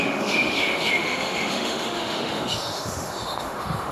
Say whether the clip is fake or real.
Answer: fake